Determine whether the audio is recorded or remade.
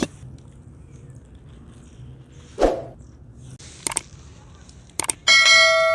recorded